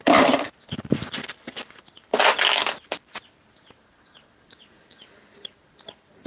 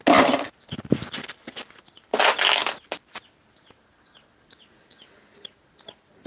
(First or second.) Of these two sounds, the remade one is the first